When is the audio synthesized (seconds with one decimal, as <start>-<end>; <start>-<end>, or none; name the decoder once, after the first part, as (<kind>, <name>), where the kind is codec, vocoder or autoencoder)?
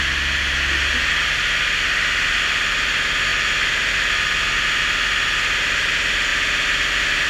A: none